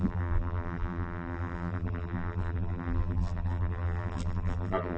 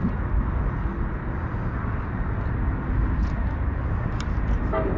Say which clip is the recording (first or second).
second